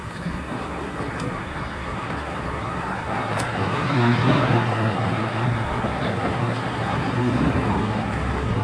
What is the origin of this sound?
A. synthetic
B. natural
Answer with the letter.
A